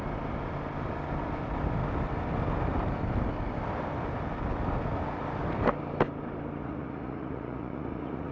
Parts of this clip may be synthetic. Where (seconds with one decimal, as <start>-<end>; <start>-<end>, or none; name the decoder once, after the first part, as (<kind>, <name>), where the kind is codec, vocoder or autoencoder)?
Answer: 6.6-8.3 (vocoder, Vocos)